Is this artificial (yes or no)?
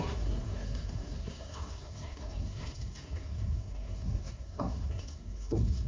yes